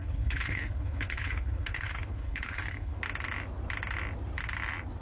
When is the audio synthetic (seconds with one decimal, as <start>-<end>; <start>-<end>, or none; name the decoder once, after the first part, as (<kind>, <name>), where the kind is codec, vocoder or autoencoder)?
0.0-3.0 (codec, HILCodec)